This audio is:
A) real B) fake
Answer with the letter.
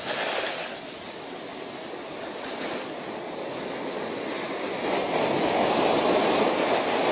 A